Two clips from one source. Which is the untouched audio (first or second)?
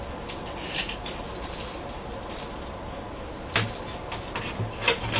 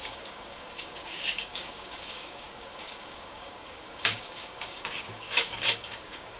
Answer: first